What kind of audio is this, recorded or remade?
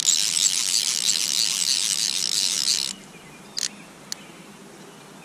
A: recorded